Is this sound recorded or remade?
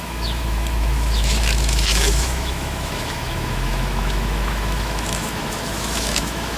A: remade